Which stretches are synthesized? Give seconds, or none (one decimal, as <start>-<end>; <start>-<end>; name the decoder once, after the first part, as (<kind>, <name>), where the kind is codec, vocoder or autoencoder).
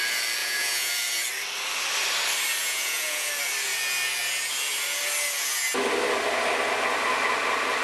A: 0.4-0.9 (vocoder, Vocos); 2.6-3.3